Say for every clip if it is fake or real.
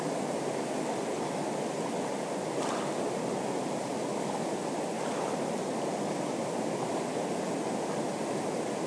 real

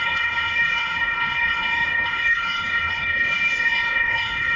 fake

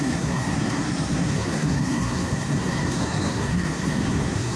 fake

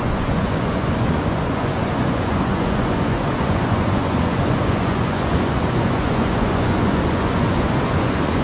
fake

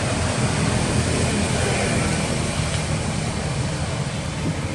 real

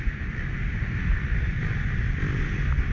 real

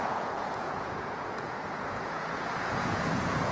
fake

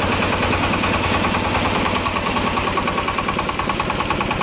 real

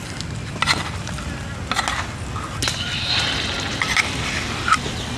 real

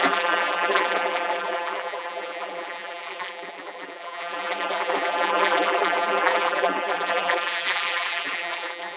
fake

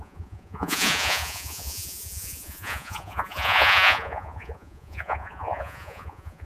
fake